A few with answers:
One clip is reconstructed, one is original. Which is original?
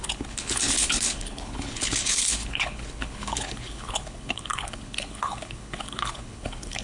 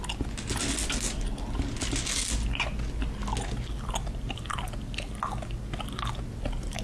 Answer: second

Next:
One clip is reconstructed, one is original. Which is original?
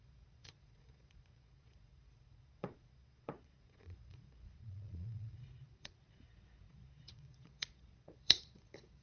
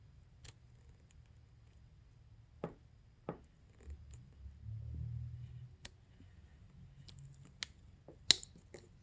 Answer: second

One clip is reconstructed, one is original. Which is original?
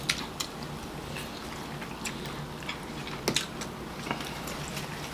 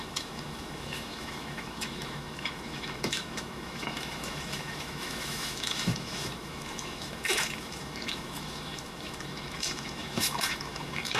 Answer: first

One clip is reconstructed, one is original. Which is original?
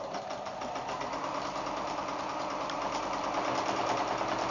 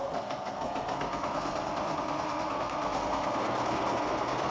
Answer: first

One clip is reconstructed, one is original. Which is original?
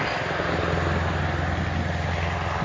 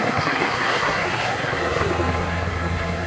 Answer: first